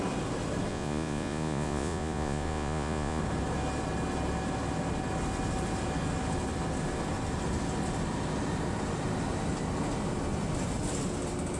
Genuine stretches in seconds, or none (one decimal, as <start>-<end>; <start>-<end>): 0.0-0.7; 3.2-11.6